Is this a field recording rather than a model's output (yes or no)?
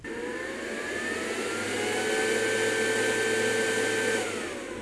yes